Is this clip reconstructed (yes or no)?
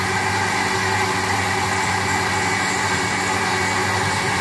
no